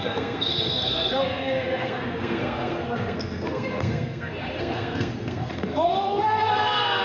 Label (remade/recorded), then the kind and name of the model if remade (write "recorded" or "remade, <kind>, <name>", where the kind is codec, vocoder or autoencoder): remade, codec, SNAC